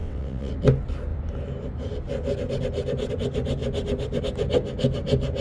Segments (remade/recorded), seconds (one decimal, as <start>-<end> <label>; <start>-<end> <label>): 0.0-0.5 remade; 0.5-5.4 recorded